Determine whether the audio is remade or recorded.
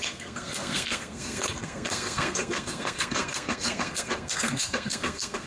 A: remade